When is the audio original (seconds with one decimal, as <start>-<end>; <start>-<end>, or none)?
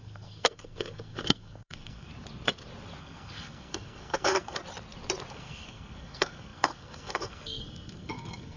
2.1-3.0; 4.6-5.3